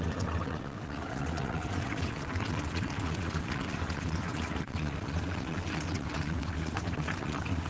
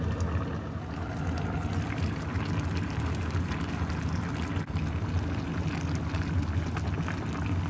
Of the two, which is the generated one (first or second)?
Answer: first